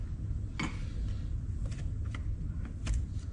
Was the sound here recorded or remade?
recorded